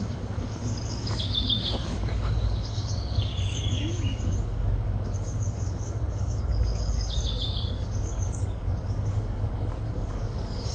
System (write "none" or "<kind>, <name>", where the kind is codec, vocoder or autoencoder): codec, DAC